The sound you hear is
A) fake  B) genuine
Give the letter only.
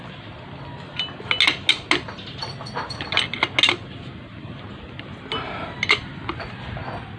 B